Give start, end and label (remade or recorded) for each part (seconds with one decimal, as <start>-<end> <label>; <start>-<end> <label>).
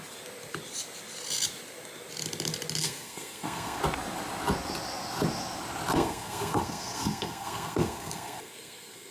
0.0-2.8 recorded; 2.8-3.8 remade; 3.8-5.9 recorded; 5.9-9.1 remade